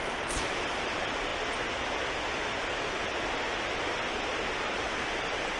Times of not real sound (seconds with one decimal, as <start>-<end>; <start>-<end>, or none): 0.0-1.3; 4.7-5.6